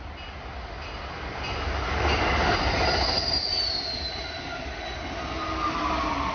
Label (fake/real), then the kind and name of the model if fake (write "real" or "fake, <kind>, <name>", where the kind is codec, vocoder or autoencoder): real